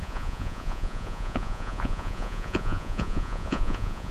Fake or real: fake